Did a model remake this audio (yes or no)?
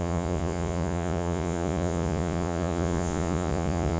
yes